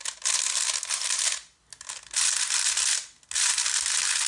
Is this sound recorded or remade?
recorded